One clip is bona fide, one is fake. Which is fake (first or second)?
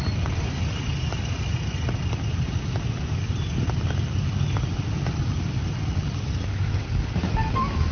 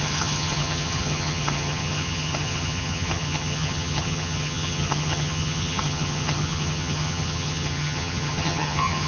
second